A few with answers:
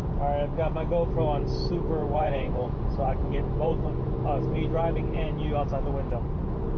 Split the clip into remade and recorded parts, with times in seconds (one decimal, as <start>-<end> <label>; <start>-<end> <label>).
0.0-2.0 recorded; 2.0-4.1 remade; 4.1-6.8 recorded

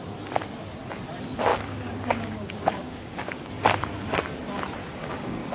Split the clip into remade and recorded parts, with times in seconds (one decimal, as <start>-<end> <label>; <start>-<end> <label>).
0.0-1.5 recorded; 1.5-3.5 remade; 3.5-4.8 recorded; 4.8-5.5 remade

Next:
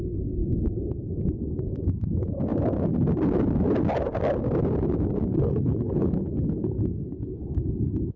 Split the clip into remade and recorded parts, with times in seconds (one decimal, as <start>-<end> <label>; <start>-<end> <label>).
0.0-5.3 recorded; 5.3-8.2 remade

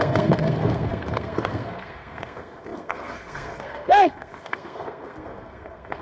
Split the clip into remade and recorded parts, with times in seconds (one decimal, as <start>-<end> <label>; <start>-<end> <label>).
0.0-6.0 remade